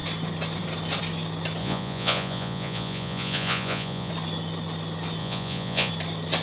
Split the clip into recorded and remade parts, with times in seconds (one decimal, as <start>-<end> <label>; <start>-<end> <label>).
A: 0.0-1.6 recorded; 1.6-4.1 remade; 4.1-5.2 recorded; 5.2-5.9 remade; 5.9-6.4 recorded